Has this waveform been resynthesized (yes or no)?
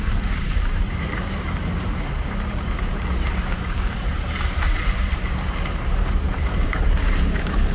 yes